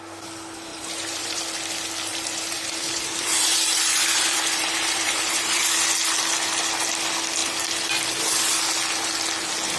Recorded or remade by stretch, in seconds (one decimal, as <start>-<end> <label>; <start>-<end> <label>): 0.0-0.7 recorded; 0.7-1.4 remade; 1.4-2.1 recorded; 2.1-5.7 remade; 5.7-9.8 recorded